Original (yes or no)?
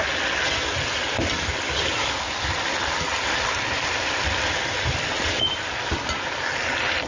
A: yes